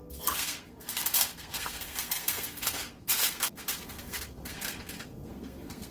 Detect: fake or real fake